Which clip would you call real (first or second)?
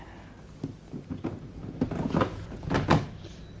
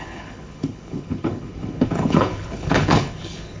first